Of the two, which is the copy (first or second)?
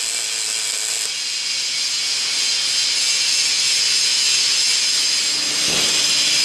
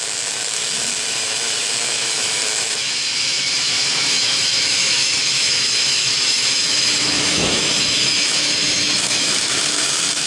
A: second